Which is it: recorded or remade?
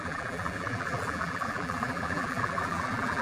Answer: remade